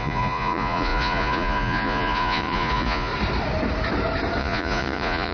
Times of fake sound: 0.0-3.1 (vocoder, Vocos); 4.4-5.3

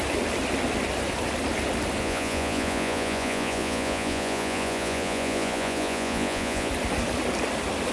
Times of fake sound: 2.0-6.7 (vocoder, Vocos)

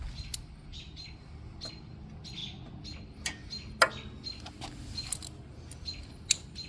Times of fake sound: none

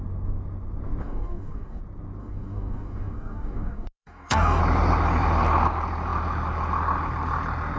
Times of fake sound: 1.0-1.8 (codec, DAC); 2.2-4.6

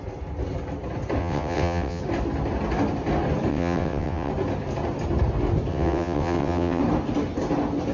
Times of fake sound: 1.2-2.0 (vocoder, WaveNeXt); 3.5-4.3; 5.7-6.8

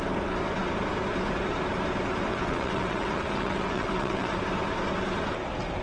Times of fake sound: 2.3-4.4 (vocoder, WaveNeXt)

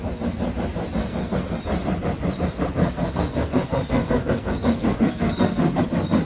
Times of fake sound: 1.0-1.6 (codec, SNAC); 2.8-5.8

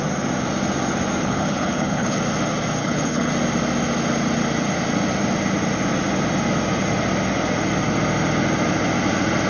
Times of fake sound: 1.2-2.2 (codec, HILCodec); 2.8-3.3